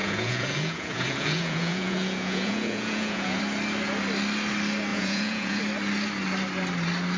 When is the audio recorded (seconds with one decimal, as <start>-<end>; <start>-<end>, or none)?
3.4-4.9; 5.6-7.2